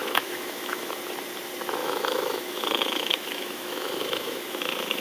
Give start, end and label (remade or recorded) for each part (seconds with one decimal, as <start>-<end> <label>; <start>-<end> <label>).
0.0-1.0 remade; 1.0-1.8 recorded; 1.8-5.0 remade